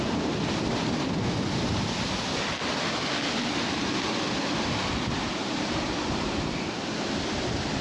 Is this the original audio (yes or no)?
yes